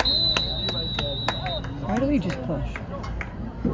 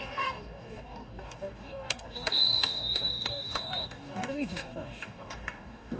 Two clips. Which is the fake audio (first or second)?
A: second